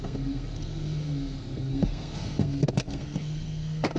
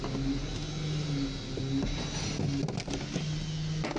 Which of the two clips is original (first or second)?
second